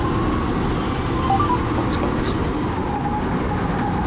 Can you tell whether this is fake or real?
real